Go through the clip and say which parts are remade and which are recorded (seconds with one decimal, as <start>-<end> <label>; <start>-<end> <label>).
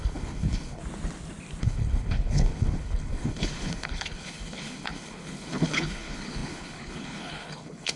0.0-0.8 remade; 0.8-1.6 recorded; 1.6-8.0 remade